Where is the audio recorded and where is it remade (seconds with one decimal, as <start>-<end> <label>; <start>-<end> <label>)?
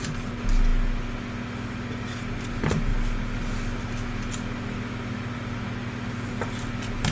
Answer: 0.0-7.1 recorded